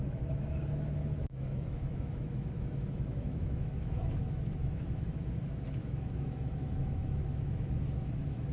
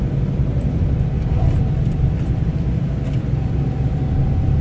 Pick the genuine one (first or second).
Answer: second